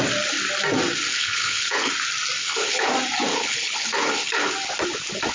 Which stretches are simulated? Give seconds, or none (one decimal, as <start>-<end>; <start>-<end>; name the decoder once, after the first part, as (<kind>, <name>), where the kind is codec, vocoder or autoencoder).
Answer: 1.1-1.9 (codec, HILCodec); 2.4-2.9; 3.3-4.5